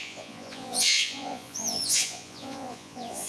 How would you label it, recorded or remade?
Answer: remade